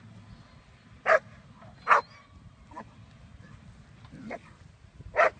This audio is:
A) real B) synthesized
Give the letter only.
A